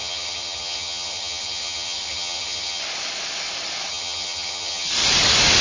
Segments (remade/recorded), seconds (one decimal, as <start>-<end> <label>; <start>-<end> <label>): 0.0-2.8 remade; 2.8-3.9 recorded; 3.9-4.9 remade; 4.9-5.6 recorded